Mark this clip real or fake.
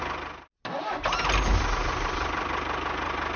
real